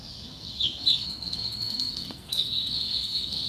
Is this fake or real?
fake